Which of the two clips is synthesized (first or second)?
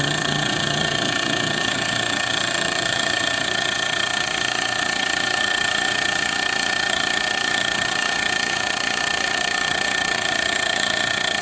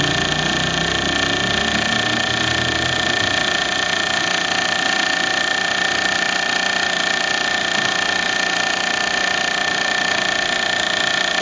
first